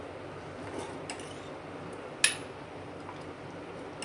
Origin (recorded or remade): recorded